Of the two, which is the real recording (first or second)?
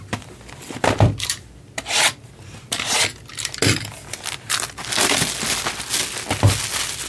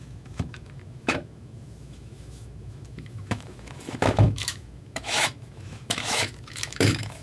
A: first